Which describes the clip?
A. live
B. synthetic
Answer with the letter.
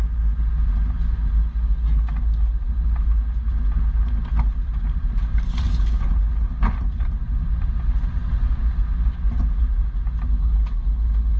A